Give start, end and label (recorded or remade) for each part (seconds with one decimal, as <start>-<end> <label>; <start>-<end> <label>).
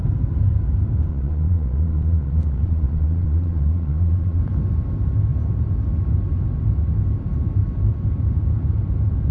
0.0-1.1 recorded; 1.1-4.4 remade; 4.4-9.3 recorded